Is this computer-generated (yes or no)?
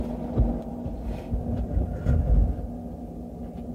no